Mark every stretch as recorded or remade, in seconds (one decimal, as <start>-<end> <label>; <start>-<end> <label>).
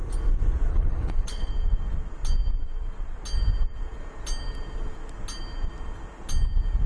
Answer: 0.0-0.7 recorded; 0.7-1.5 remade; 1.5-6.9 recorded